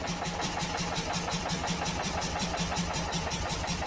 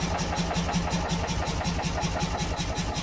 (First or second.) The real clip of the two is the second